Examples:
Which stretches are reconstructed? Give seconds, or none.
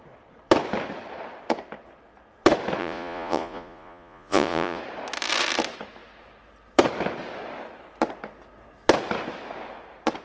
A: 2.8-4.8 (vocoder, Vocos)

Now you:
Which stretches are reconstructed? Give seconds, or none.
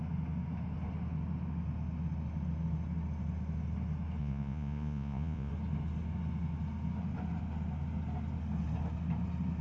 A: 4.2-5.5 (vocoder, Vocos)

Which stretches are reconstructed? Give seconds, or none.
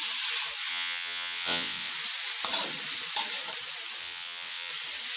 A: 0.7-1.9 (vocoder, WaveNeXt); 4.0-4.7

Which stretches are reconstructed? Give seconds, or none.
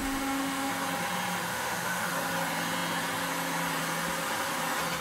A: 0.0-0.7 (autoencoder, DAC-VAE); 1.5-2.1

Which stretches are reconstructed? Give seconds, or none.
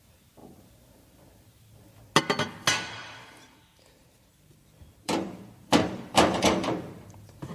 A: 3.0-7.5 (vocoder, BigVGAN v2)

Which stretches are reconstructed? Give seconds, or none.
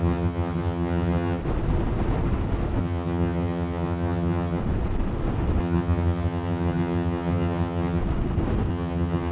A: 0.0-1.4 (vocoder, HiFi-GAN); 2.8-4.6; 5.6-8.0; 8.7-9.3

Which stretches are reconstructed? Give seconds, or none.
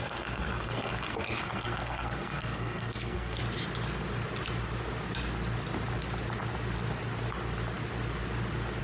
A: 0.0-3.4 (codec, SNAC)